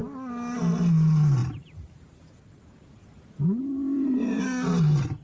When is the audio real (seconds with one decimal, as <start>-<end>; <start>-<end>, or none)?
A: 0.0-5.2